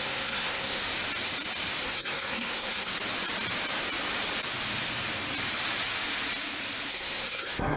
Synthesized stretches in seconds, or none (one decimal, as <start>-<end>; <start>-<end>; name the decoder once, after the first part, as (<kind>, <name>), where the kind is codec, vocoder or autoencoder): 0.0-0.8 (codec, SNAC); 1.8-2.9; 6.9-7.8